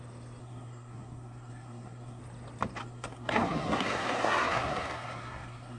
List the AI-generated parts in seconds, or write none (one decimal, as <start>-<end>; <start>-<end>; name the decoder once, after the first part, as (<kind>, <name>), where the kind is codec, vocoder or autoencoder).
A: 0.4-2.2 (codec, SNAC); 2.8-5.8